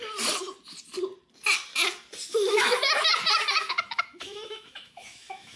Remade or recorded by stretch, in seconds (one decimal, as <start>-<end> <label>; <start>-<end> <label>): 0.0-2.3 recorded; 2.3-5.6 remade